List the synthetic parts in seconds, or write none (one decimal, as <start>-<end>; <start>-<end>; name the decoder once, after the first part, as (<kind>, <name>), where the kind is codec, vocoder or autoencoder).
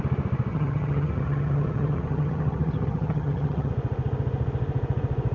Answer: 0.5-3.7 (vocoder, HiFi-GAN)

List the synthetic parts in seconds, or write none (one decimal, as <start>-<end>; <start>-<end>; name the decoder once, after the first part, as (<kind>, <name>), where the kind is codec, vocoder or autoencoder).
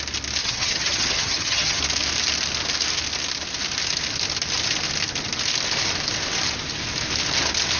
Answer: 0.4-1.8 (vocoder, HiFi-GAN)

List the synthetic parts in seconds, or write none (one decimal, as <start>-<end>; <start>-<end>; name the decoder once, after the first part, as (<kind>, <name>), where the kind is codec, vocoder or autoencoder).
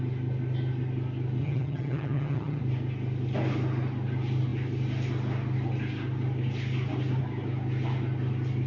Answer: 1.4-2.6 (vocoder, HiFi-GAN)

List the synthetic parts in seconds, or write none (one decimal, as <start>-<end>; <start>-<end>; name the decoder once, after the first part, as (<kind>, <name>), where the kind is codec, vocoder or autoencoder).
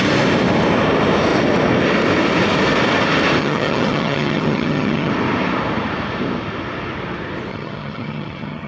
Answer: 3.4-5.1 (vocoder, HiFi-GAN); 7.5-8.7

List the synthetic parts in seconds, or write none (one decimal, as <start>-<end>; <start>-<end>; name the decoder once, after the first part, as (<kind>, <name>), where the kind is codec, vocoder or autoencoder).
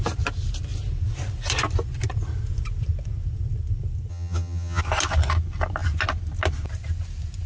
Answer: 4.1-4.8 (vocoder, HiFi-GAN)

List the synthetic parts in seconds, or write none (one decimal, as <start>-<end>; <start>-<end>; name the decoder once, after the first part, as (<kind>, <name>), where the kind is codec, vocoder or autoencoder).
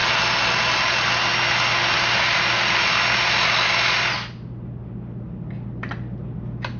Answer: none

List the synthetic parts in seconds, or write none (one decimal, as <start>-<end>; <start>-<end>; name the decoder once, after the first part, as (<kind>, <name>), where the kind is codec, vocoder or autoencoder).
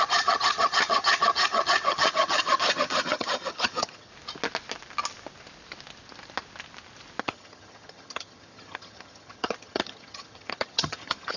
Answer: 0.0-4.1 (vocoder, HiFi-GAN); 7.2-11.4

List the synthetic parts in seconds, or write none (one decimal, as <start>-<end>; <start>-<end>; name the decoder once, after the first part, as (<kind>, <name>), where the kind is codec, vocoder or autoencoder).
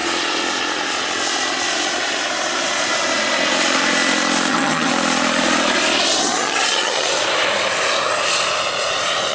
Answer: 4.5-4.9 (vocoder, HiFi-GAN); 6.2-7.1